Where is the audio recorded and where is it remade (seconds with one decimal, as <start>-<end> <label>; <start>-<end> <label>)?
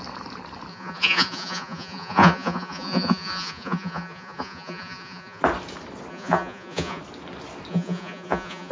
0.0-0.7 recorded; 0.7-5.4 remade; 5.4-6.1 recorded; 6.1-7.0 remade; 7.0-7.7 recorded; 7.7-8.7 remade